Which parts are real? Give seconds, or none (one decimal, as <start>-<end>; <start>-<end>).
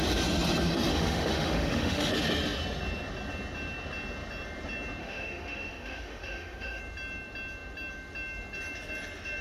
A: 0.0-0.9; 2.1-5.0; 6.8-9.4